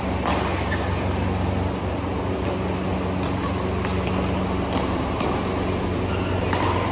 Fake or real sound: real